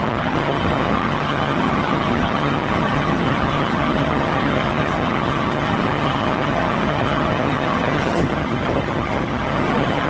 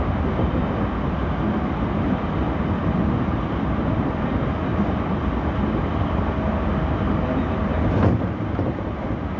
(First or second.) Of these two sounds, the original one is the second